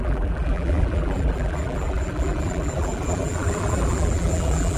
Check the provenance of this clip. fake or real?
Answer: fake